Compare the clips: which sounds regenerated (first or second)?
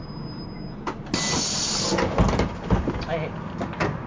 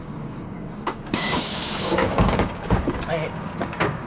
second